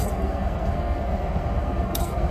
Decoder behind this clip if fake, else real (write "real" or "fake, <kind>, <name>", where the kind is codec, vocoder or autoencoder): fake, codec, SNAC